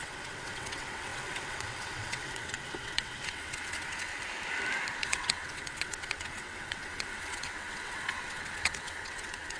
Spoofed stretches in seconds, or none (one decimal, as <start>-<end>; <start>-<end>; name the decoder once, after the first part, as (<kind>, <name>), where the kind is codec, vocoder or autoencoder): 0.0-4.1 (vocoder, WaveNeXt); 5.0-9.6